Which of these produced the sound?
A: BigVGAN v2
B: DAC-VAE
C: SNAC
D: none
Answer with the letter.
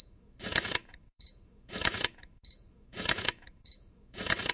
B